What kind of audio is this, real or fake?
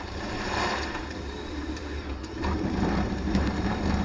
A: fake